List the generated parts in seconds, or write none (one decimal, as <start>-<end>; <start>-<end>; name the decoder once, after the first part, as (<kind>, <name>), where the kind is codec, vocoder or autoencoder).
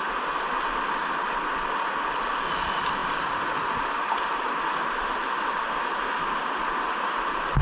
none